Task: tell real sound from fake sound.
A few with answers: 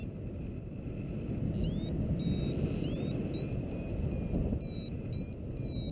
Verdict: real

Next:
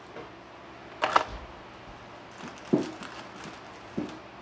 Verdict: real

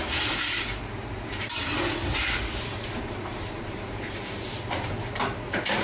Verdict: fake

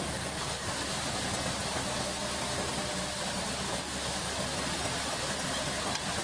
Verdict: real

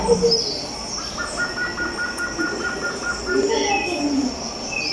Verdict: real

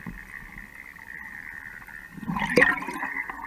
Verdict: real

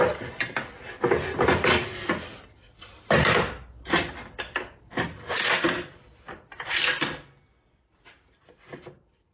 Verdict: fake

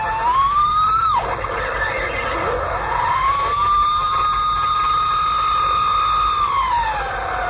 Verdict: real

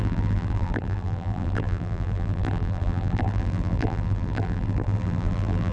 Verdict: fake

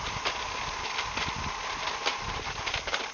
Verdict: real